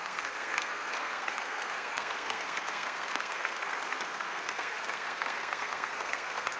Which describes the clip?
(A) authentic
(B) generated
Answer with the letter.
B